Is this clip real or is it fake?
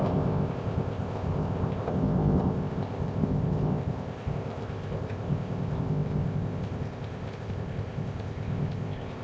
fake